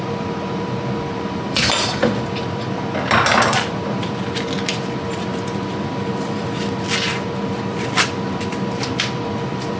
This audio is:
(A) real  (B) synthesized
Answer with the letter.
B